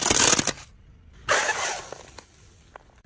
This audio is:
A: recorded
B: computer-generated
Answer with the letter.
A